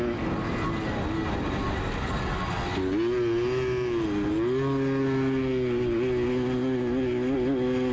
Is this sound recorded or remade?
recorded